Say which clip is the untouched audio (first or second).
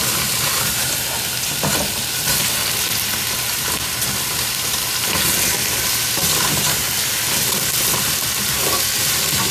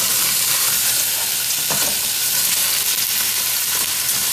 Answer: second